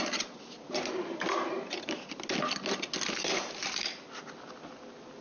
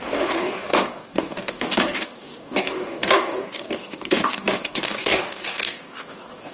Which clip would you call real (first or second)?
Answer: first